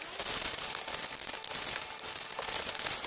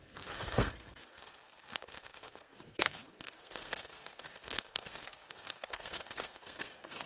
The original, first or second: first